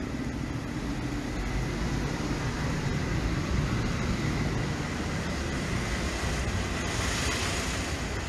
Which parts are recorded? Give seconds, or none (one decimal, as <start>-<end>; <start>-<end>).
0.0-8.3